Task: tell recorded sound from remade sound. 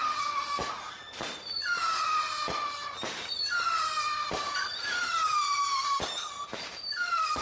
remade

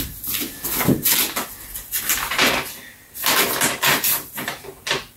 remade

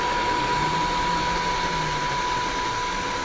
recorded